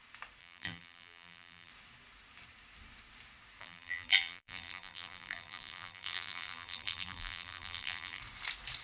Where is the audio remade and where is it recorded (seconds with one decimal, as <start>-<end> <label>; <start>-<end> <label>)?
0.0-0.4 recorded; 0.4-1.7 remade; 1.7-3.6 recorded; 3.6-8.2 remade; 8.2-8.8 recorded